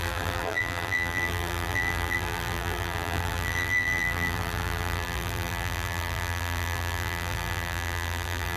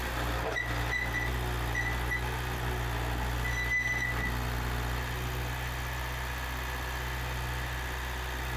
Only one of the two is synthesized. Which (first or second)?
first